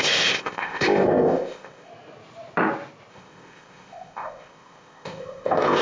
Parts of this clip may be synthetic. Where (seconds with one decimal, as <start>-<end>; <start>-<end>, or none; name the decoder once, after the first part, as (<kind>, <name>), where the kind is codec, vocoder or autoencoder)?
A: 0.0-1.9 (codec, ZipCodec); 3.1-5.8

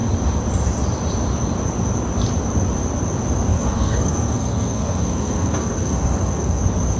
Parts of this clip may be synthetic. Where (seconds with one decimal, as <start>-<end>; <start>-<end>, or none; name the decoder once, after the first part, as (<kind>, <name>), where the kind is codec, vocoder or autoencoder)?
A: 3.5-6.6 (codec, SNAC)

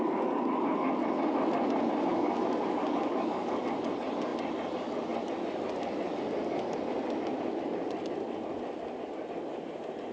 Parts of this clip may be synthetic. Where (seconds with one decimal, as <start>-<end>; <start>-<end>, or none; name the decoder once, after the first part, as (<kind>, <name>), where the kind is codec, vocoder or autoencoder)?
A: 2.1-3.6 (codec, DAC)

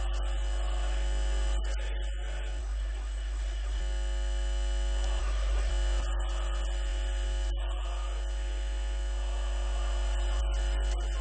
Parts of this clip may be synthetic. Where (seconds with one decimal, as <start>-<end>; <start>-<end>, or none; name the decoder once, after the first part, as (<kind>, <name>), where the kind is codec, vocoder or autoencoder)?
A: 2.6-3.8 (codec, SNAC); 5.2-5.7

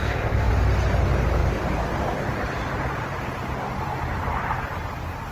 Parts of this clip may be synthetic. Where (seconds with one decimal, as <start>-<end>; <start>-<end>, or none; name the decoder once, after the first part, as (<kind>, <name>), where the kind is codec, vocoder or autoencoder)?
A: 0.0-0.5 (codec, SNAC)

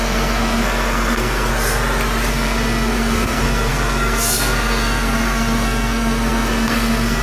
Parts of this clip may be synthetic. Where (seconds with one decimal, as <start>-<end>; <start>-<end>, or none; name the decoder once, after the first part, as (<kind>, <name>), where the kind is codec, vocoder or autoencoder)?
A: 0.0-1.5 (codec, SNAC); 2.3-7.2

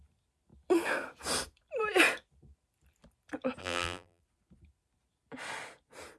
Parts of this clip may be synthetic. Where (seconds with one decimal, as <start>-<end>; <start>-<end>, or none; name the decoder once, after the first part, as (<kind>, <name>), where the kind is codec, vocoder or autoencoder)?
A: 3.6-4.2 (vocoder, BigVGAN v2)